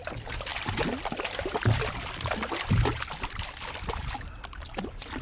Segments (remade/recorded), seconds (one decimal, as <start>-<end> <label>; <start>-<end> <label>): 0.0-5.2 recorded